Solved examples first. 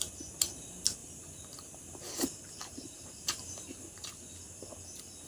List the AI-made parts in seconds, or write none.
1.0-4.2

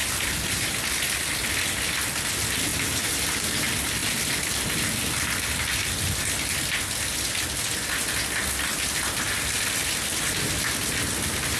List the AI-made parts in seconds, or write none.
0.0-0.8; 2.7-3.6